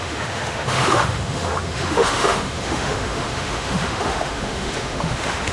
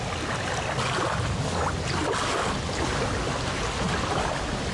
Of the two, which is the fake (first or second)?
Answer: first